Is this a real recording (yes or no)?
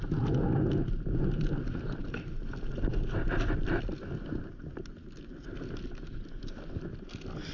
yes